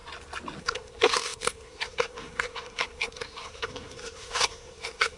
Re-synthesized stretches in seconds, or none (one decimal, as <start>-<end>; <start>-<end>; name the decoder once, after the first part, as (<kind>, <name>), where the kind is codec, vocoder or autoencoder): 0.6-5.2 (codec, SNAC)